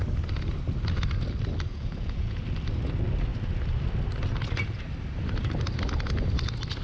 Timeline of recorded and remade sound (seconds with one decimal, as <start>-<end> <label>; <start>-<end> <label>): 0.0-1.7 recorded; 1.7-2.4 remade; 2.4-6.8 recorded